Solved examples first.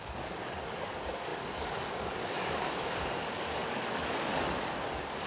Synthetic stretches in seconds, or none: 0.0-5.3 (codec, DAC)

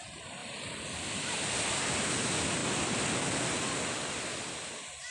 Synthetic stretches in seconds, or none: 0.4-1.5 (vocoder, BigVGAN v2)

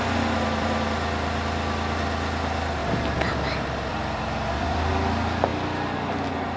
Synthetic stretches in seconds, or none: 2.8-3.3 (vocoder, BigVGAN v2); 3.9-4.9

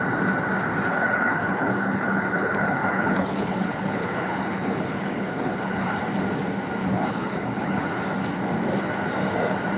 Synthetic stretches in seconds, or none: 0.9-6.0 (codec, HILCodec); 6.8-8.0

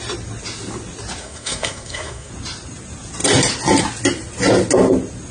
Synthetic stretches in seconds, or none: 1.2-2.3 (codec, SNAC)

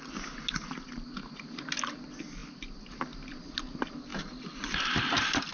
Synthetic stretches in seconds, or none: 4.1-5.0 (vocoder, BigVGAN v2)

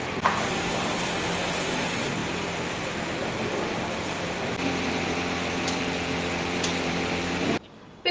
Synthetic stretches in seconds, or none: 0.0-8.1 (vocoder, BigVGAN v2)